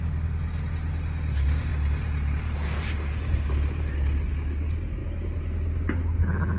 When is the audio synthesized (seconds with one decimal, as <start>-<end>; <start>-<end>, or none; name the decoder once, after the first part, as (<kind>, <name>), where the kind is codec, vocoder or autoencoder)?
none